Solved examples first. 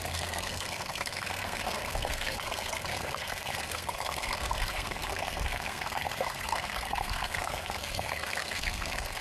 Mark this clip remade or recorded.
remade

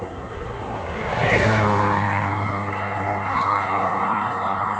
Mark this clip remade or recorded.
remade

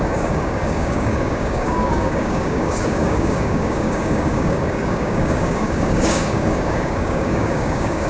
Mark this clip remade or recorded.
remade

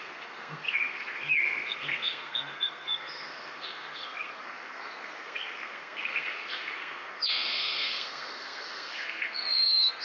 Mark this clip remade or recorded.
remade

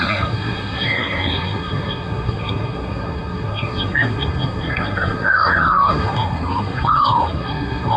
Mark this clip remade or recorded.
remade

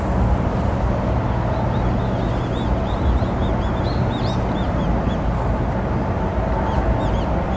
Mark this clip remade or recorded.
recorded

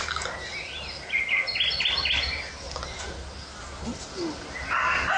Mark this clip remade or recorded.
recorded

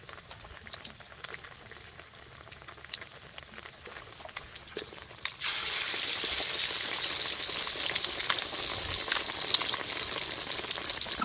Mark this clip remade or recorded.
recorded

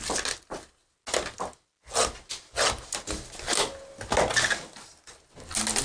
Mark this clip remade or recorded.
recorded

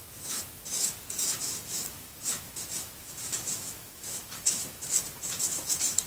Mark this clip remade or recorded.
remade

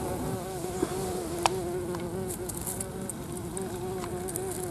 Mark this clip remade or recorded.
recorded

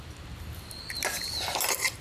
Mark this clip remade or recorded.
recorded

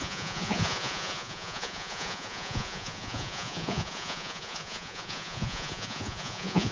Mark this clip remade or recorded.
remade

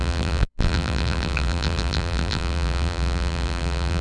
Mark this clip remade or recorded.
remade